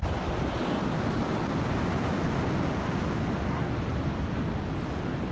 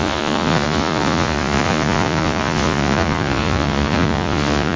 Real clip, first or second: first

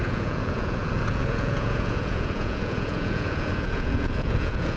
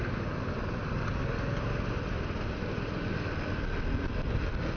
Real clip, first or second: second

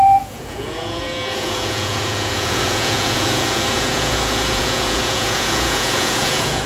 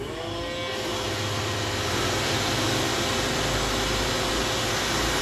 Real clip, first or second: second